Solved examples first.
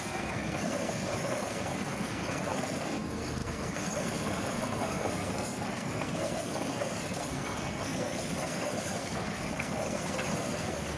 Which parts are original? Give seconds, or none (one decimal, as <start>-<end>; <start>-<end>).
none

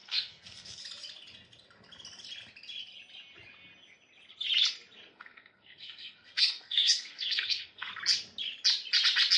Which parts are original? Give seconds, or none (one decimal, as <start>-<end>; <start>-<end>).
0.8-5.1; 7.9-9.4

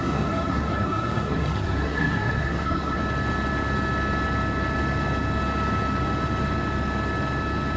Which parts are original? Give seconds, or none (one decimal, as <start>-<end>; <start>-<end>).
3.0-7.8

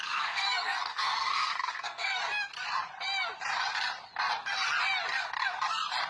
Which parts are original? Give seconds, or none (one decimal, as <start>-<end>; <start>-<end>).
2.2-6.1

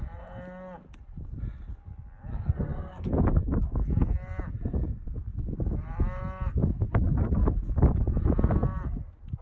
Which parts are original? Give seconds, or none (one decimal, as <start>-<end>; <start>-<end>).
0.0-2.3; 3.1-9.4

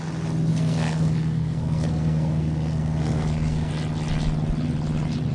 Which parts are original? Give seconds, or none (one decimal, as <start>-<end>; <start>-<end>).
0.0-0.5; 3.7-5.3

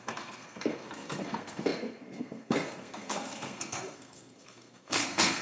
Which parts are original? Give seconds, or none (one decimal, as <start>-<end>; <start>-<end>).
none

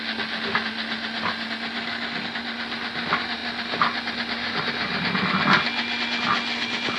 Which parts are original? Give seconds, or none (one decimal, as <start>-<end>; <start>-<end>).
0.0-7.0